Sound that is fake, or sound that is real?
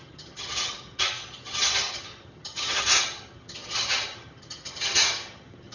fake